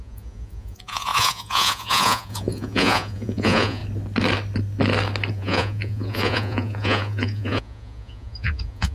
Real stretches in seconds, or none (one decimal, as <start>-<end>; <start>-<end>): 3.8-5.3